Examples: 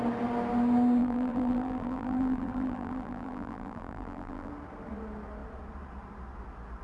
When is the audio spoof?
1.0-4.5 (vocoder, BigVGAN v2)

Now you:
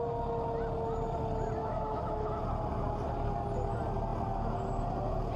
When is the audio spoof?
1.6-2.4 (autoencoder, DAC-VAE)

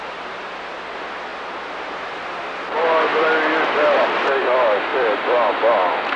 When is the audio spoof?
none

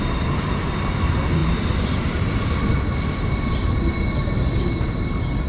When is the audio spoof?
none

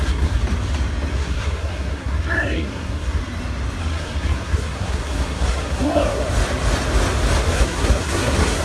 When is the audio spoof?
0.0-0.4 (codec, SNAC); 1.1-3.2; 3.8-6.2; 7.4-8.6

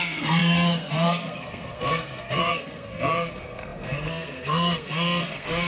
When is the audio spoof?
0.0-5.7 (codec, SNAC)